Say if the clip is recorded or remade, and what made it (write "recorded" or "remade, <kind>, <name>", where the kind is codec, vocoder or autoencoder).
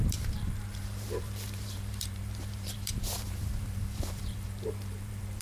remade, vocoder, BigVGAN v2